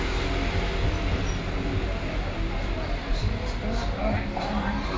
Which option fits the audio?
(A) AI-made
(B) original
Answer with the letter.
B